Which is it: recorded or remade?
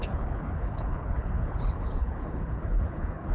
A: remade